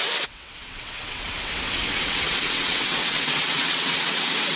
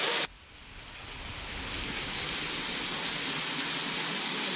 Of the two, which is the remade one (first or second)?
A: first